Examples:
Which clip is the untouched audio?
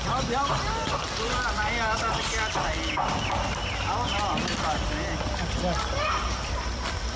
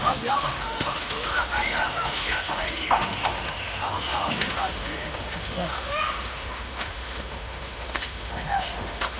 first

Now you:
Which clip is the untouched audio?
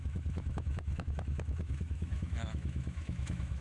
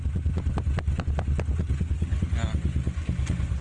second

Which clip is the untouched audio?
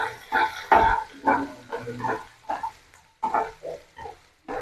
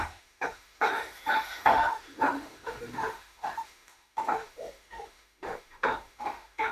first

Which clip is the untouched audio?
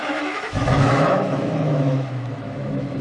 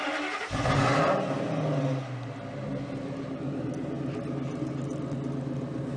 second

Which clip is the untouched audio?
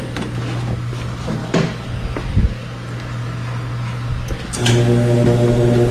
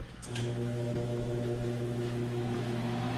first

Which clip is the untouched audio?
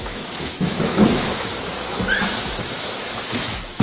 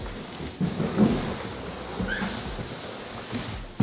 second